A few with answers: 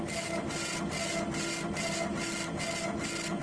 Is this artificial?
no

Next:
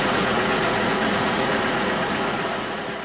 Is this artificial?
yes